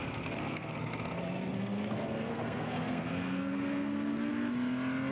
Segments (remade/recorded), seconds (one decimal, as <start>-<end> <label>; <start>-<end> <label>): 0.0-4.3 remade; 4.3-5.1 recorded